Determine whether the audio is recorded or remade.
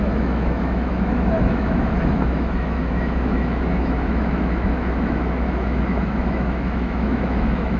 remade